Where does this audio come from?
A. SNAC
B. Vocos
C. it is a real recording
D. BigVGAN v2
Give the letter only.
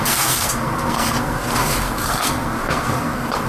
A